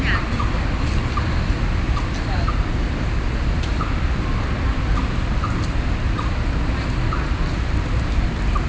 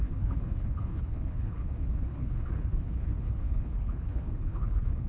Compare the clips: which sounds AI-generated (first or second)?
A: second